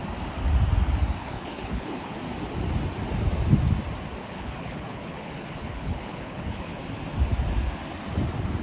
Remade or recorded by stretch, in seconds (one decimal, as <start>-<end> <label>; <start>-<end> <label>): 0.0-1.2 recorded; 1.2-2.2 remade; 2.2-4.2 recorded; 4.2-6.8 remade; 6.8-8.6 recorded